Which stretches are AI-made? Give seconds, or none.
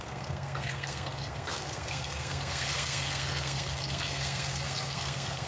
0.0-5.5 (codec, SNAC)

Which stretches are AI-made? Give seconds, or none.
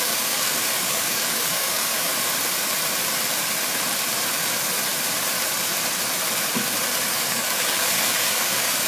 0.0-2.1 (codec, DAC); 7.1-8.9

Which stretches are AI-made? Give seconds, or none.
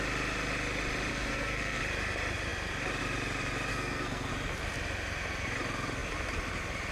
1.1-1.8 (codec, SNAC); 3.7-4.3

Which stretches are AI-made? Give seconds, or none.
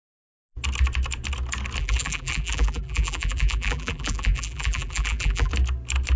1.8-5.5 (vocoder, BigVGAN v2)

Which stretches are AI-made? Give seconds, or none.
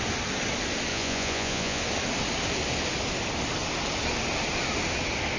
0.9-1.8 (vocoder, Vocos)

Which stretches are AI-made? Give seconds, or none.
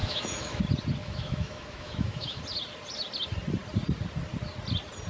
0.0-0.6 (autoencoder, DAC-VAE); 1.0-2.4